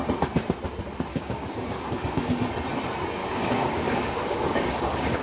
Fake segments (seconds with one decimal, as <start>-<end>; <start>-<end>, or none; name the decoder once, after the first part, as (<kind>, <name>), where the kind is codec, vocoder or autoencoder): 1.1-2.3 (codec, DAC); 3.2-5.2